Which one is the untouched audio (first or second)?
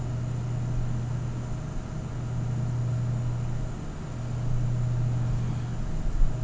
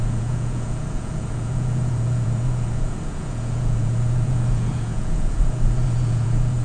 first